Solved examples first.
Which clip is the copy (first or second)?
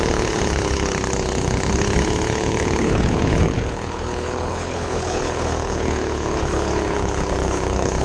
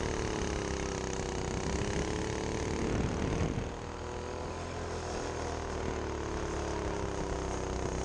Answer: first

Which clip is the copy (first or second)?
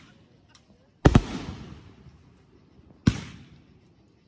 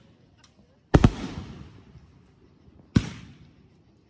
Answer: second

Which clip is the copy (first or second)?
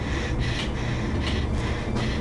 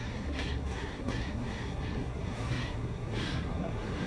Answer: second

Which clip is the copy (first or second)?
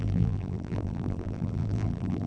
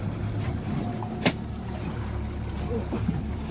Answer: first